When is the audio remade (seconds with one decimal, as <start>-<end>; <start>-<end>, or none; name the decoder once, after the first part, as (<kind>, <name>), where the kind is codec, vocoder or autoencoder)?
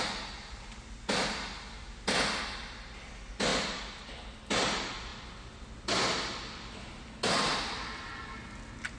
3.5-4.2 (vocoder, BigVGAN v2)